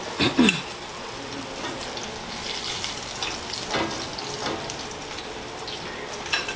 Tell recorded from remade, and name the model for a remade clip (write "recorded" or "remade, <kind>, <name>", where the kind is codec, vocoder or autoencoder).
recorded